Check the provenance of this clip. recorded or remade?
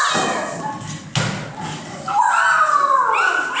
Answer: recorded